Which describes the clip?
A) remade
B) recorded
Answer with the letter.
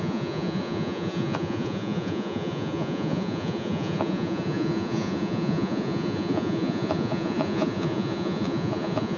A